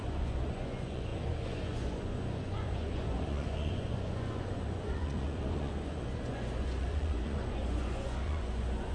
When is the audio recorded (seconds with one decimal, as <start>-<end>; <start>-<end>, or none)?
none